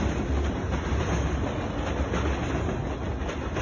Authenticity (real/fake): real